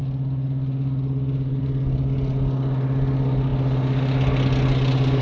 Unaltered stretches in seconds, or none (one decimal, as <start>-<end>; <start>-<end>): 0.0-5.2